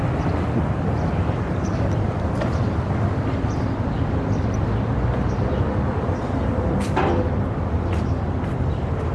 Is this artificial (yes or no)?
no